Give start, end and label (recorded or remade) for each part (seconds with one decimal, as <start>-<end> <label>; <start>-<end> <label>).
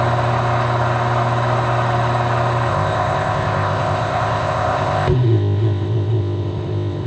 0.0-2.7 recorded; 2.7-7.1 remade